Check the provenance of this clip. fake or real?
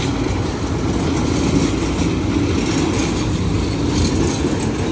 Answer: real